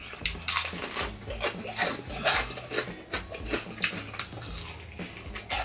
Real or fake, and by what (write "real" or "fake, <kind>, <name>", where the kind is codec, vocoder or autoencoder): real